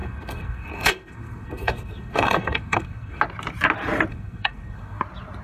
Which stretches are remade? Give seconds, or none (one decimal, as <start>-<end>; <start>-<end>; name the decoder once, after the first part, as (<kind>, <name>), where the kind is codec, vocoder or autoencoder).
0.0-3.2 (codec, SNAC); 4.1-5.0